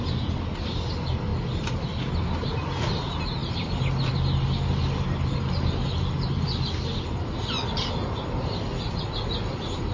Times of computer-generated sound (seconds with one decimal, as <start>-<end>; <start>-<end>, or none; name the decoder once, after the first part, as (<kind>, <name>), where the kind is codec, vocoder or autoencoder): none